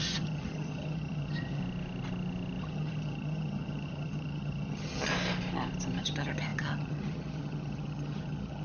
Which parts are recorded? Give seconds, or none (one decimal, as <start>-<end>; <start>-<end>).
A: 1.6-2.6; 5.1-6.0